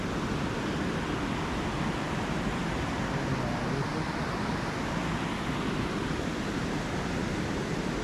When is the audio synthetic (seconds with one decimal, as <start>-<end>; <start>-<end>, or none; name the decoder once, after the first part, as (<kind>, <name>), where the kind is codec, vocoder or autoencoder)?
none